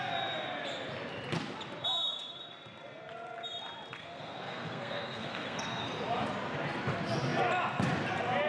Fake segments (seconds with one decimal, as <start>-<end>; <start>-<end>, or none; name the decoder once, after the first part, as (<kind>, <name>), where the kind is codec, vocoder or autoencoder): 4.0-5.8 (codec, SNAC)

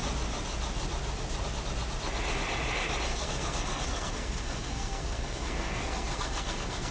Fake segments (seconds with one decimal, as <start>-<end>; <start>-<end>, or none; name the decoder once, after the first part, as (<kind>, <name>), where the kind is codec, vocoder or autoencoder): 3.1-6.9 (codec, SNAC)

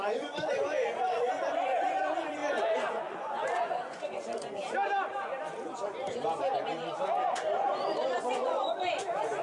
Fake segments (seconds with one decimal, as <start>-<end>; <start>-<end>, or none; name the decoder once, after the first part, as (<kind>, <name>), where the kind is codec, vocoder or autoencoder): 0.0-2.4 (vocoder, Vocos); 3.1-4.6; 7.3-9.4

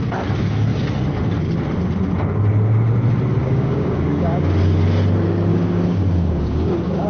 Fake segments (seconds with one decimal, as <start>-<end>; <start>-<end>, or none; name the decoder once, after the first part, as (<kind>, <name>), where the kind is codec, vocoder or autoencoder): 3.4-4.5 (codec, DAC); 5.5-7.1